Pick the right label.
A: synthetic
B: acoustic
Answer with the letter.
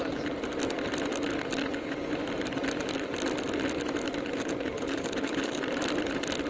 B